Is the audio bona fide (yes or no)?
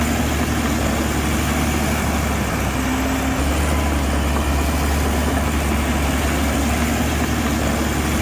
yes